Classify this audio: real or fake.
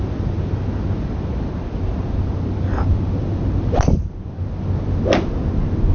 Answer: real